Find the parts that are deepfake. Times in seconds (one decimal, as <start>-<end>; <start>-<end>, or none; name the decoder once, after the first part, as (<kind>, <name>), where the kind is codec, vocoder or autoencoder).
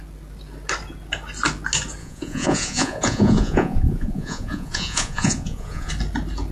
2.0-5.9 (vocoder, Vocos)